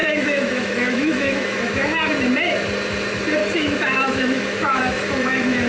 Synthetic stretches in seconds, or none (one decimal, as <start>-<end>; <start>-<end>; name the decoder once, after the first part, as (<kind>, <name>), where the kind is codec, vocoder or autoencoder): 0.0-2.1 (autoencoder, DAC-VAE); 3.4-5.7